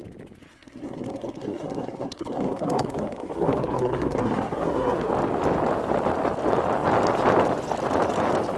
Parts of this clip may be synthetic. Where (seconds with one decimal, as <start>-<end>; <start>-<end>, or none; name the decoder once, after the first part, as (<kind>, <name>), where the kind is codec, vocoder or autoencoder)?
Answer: 0.5-5.1 (codec, SNAC)